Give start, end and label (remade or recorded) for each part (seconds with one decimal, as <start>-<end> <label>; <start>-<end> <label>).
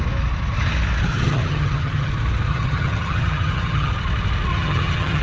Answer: 0.0-1.1 recorded; 1.1-2.1 remade; 2.1-2.5 recorded; 2.5-3.9 remade; 3.9-4.5 recorded; 4.5-5.2 remade